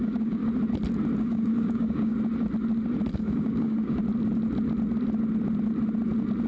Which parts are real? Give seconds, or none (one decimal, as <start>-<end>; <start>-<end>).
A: 0.4-1.2; 2.1-3.1; 4.0-6.5

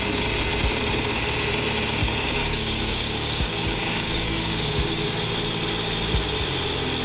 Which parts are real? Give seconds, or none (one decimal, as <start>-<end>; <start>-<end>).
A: 0.0-2.0; 5.3-7.0

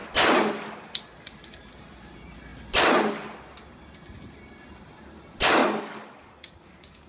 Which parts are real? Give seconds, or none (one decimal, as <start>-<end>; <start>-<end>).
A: 0.0-5.6